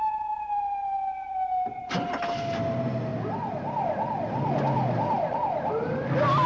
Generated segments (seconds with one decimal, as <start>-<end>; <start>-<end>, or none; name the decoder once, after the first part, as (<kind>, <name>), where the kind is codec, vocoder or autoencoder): none